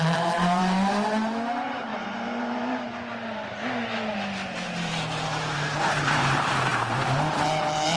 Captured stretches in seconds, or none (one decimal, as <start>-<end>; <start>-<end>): none